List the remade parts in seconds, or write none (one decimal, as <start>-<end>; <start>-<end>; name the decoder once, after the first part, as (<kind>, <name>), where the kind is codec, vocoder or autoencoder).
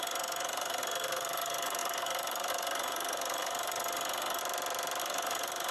0.0-4.4 (codec, SNAC); 5.0-5.7